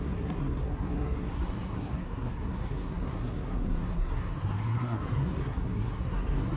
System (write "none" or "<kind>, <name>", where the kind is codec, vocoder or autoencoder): codec, SNAC